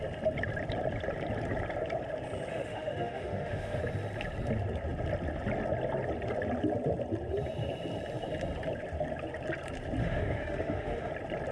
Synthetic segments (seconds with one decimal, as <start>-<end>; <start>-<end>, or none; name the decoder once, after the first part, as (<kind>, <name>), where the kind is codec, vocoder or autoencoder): 2.5-3.8 (autoencoder, DAC-VAE); 10.0-11.1